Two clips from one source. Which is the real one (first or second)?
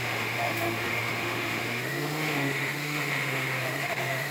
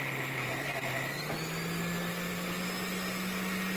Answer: second